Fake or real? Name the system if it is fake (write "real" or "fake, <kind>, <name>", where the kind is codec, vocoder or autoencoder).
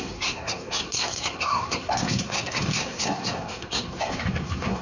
fake, codec, SNAC